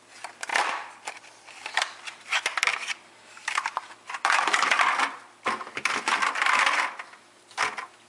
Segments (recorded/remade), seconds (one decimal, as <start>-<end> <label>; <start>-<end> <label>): 0.0-0.5 recorded; 0.5-2.0 remade; 2.0-2.7 recorded; 2.7-6.7 remade; 6.7-8.1 recorded